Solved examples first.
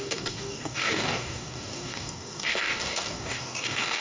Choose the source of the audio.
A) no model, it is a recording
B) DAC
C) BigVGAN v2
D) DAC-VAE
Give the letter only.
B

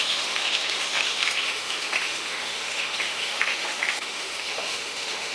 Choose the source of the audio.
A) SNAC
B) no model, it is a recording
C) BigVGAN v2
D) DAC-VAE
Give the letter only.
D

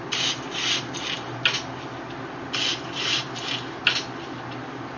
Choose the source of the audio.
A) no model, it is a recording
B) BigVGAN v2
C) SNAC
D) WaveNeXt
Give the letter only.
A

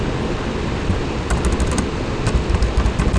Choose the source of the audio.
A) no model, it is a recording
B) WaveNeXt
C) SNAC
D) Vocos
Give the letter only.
A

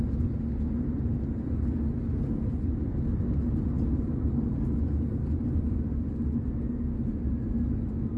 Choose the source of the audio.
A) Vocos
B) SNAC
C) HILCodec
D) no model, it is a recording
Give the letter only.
D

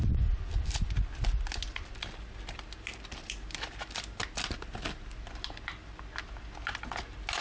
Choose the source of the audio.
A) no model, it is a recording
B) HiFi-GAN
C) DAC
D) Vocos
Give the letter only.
A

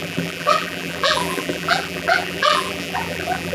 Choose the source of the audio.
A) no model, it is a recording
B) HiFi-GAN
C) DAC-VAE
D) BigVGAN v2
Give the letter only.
D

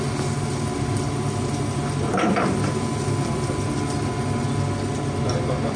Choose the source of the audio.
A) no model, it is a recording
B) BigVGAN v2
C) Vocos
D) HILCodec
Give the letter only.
A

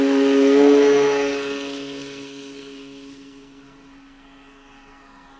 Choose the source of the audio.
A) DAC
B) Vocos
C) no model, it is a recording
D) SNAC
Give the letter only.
D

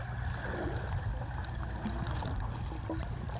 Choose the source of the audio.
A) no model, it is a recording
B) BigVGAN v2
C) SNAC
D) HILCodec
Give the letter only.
A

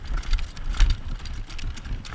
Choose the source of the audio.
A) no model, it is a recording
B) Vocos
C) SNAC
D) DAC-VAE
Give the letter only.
A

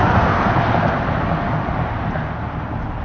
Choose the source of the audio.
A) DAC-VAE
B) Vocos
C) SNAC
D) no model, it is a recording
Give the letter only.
D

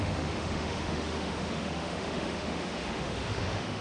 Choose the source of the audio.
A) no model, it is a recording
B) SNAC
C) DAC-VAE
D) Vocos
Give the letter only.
C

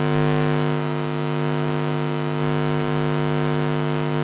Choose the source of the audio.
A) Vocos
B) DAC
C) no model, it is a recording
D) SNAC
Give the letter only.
C